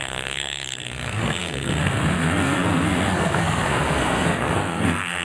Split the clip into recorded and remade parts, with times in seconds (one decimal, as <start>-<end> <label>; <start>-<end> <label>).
0.0-5.2 remade